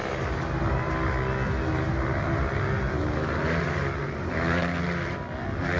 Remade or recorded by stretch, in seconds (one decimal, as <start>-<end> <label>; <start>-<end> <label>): 0.0-5.8 recorded